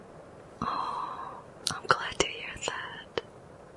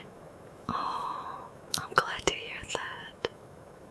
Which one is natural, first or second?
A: first